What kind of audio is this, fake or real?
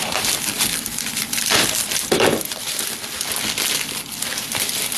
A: fake